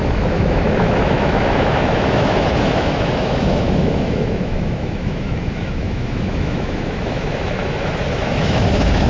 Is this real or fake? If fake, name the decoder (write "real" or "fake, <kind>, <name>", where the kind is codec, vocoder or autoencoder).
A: fake, autoencoder, DAC-VAE